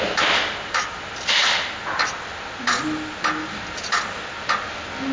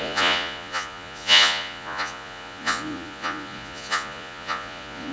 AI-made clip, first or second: second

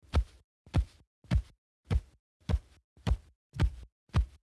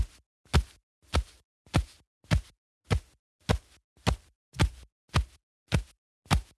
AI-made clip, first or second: first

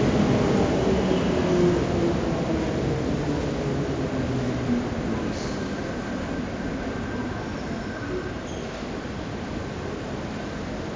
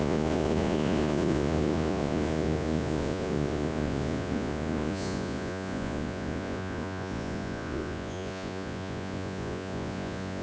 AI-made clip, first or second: second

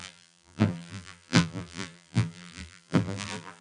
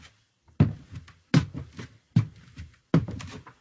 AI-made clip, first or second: first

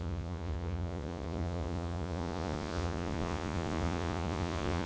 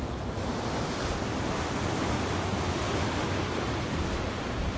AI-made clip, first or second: first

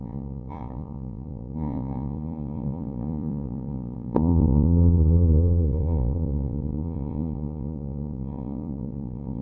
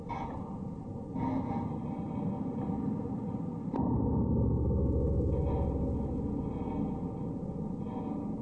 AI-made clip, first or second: first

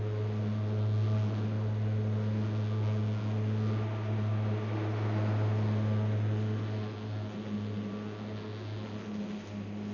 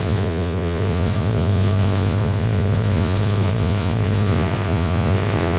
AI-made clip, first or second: second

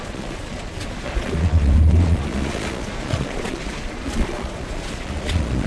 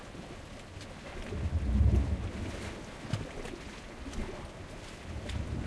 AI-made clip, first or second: first